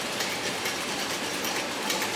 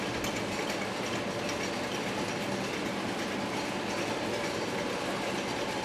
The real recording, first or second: second